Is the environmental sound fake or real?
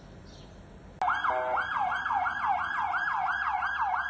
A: real